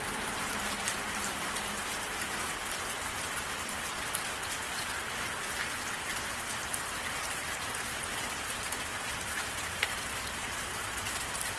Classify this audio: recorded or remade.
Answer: recorded